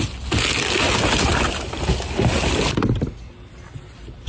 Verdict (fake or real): real